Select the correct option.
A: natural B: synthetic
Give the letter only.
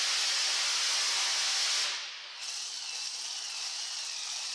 A